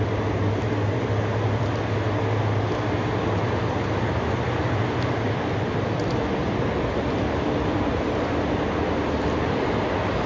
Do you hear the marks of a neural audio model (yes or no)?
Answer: no